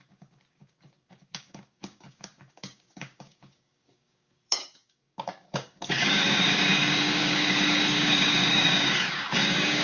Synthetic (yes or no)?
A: yes